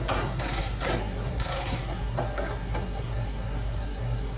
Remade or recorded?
remade